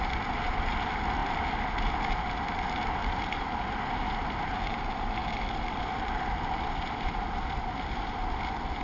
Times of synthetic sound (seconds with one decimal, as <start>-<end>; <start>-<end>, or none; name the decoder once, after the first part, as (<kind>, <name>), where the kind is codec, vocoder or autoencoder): none